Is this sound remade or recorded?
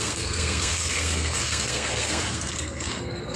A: remade